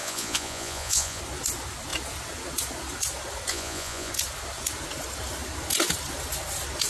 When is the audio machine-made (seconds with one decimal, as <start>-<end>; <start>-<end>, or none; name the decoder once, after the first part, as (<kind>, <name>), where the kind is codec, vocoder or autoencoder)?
0.0-1.2 (vocoder, Vocos); 3.5-4.1